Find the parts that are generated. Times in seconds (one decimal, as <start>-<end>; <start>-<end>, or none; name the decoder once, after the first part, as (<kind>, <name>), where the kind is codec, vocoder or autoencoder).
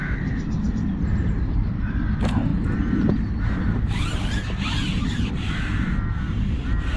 4.7-5.3 (vocoder, BigVGAN v2)